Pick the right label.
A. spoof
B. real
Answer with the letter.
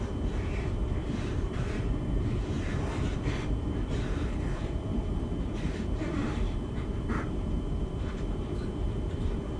A